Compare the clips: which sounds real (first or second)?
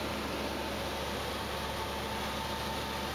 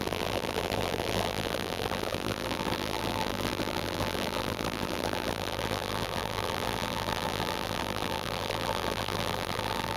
first